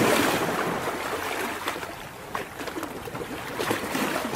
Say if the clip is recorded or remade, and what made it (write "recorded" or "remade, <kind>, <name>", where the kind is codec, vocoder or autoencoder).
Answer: recorded